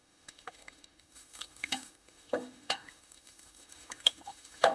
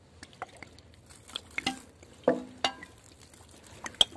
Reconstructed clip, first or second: first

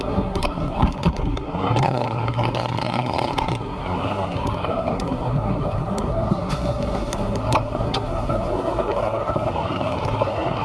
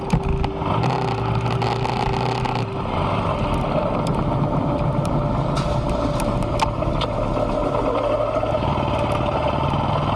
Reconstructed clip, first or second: first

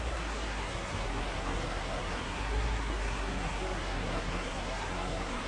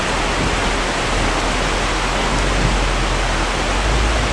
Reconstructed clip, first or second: first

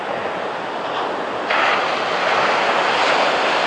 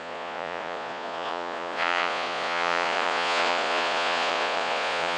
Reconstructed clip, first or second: second